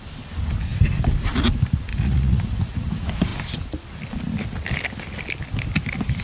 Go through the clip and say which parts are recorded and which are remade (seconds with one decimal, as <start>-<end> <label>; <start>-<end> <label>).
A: 0.0-1.9 recorded; 1.9-2.9 remade; 2.9-6.2 recorded